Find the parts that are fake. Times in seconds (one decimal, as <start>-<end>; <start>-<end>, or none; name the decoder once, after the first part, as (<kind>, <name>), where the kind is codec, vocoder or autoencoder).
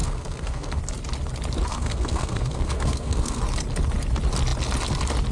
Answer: 0.0-0.8 (codec, SNAC); 1.7-3.4